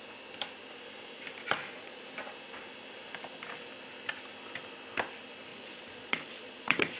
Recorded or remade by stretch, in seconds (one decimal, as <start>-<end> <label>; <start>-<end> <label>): 0.0-1.4 recorded; 1.4-2.0 remade; 2.0-5.5 recorded; 5.5-7.0 remade